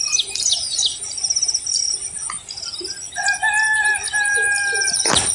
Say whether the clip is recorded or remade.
recorded